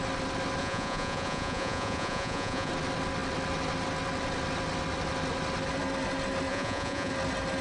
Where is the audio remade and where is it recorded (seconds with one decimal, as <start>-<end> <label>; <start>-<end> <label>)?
0.0-0.6 recorded; 0.6-2.7 remade; 2.7-6.5 recorded; 6.5-7.1 remade; 7.1-7.6 recorded